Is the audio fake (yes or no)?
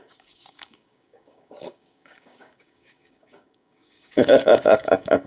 yes